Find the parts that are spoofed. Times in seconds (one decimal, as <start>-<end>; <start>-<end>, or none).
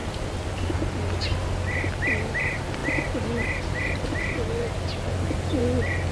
none